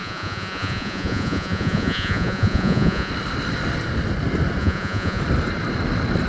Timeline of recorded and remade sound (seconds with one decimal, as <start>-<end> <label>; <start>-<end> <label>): 0.0-3.1 remade; 3.1-4.6 recorded; 4.6-5.2 remade; 5.2-6.3 recorded